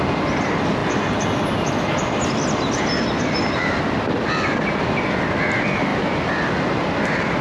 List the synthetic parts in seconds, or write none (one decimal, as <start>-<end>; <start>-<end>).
none